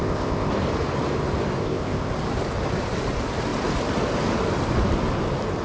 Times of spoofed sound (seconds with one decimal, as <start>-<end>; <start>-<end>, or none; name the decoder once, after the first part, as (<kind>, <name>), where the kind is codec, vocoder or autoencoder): 0.0-0.5 (codec, ZipCodec); 1.6-2.1

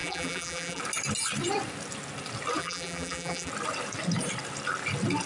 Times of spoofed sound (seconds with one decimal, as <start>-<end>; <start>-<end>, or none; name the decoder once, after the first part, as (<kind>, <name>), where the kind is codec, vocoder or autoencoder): 0.0-0.8 (vocoder, BigVGAN v2); 2.6-3.5